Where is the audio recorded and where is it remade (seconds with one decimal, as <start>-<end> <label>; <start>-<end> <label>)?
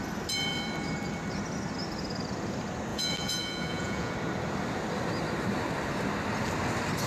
0.0-2.9 recorded; 2.9-4.1 remade; 4.1-7.1 recorded